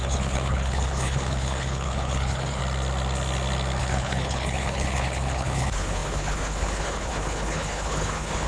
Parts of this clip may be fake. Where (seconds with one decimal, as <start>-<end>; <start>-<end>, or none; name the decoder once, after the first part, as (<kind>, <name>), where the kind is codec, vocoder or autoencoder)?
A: 0.0-2.6 (codec, HILCodec); 3.8-8.5